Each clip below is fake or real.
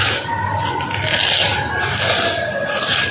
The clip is real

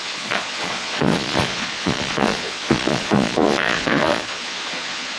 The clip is fake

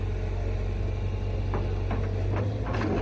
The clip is real